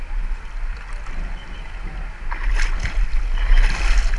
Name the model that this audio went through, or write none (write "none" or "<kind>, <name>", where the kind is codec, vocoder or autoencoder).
none